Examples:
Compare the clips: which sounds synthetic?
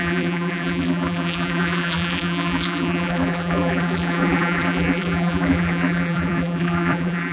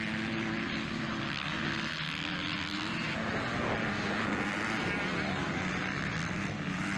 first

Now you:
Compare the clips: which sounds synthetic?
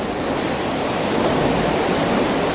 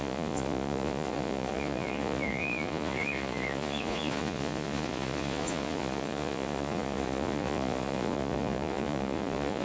second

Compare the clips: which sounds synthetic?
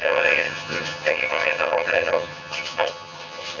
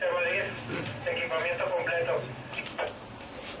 first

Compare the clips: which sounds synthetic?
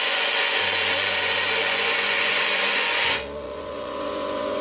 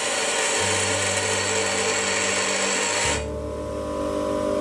first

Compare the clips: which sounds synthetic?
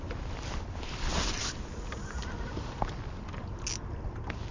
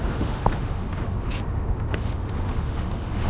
second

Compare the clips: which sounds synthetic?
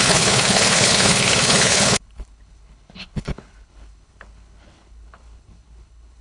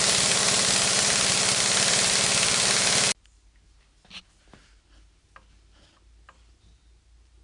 first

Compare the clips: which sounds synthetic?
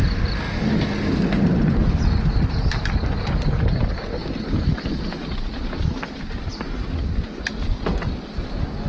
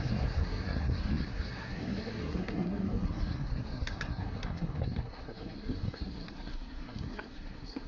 second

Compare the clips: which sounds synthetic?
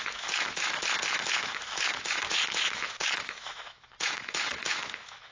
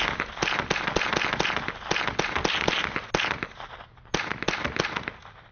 first